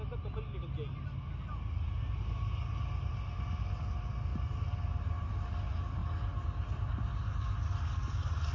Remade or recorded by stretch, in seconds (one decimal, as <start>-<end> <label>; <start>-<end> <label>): 0.0-8.5 recorded